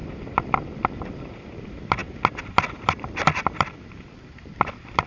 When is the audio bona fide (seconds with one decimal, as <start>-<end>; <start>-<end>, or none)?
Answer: 2.0-2.8